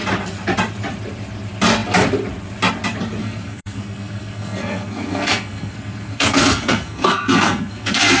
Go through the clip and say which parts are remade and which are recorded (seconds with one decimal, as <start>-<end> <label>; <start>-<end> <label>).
0.0-3.2 recorded; 3.2-8.2 remade